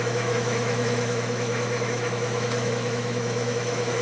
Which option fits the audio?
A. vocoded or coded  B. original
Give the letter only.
A